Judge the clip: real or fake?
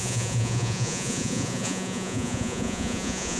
fake